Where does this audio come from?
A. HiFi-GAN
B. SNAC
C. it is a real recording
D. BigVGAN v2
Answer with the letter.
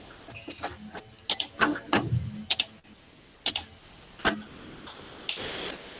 C